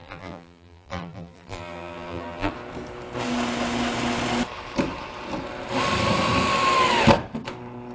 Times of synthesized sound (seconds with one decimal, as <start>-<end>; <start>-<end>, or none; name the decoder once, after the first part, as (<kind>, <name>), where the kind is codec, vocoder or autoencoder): 0.0-2.5 (vocoder, BigVGAN v2)